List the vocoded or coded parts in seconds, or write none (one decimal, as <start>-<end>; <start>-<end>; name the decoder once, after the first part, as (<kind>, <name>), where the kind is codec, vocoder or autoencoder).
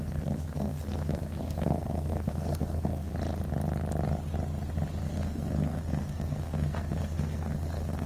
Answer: 0.0-3.1 (codec, SNAC); 5.0-8.1